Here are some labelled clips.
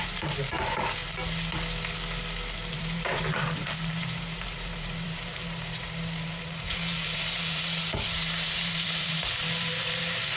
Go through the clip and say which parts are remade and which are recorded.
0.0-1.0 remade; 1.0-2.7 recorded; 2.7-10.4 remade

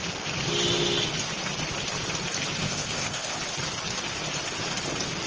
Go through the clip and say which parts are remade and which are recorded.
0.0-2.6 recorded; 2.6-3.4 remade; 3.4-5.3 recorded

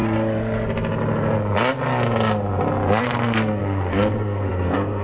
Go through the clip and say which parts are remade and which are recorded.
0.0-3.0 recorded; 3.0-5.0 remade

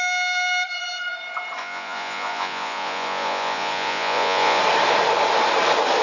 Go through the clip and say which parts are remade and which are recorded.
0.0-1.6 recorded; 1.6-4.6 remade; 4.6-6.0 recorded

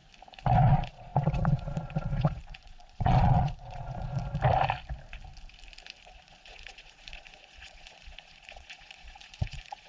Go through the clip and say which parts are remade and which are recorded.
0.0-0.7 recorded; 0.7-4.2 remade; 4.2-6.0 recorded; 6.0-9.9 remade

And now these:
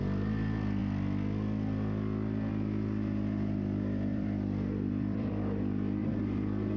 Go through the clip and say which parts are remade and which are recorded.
0.0-4.1 recorded; 4.1-5.3 remade; 5.3-6.0 recorded; 6.0-6.8 remade